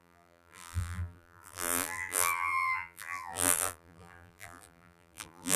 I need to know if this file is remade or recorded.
remade